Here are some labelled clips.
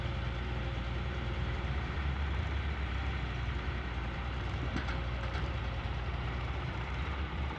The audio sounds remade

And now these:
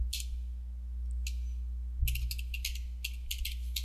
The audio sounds recorded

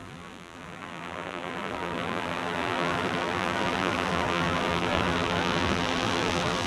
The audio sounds remade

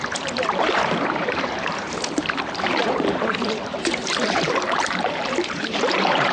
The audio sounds remade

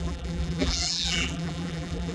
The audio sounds remade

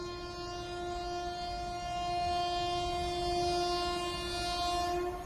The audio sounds recorded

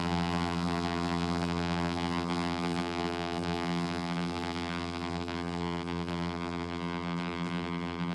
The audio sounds remade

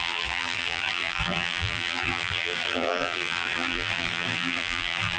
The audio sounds remade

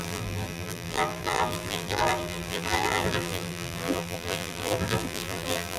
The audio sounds remade